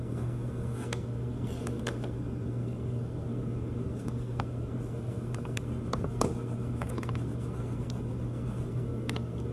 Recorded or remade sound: remade